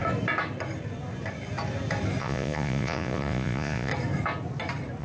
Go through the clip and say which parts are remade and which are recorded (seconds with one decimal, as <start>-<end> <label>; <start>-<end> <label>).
0.0-2.2 recorded; 2.2-3.9 remade; 3.9-5.0 recorded